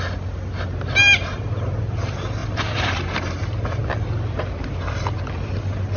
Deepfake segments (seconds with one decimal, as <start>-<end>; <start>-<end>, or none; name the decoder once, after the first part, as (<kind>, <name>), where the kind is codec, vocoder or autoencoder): 2.4-3.2 (vocoder, BigVGAN v2)